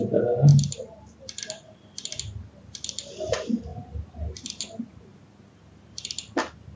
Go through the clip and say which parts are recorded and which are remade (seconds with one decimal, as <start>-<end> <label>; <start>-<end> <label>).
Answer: 0.0-6.8 recorded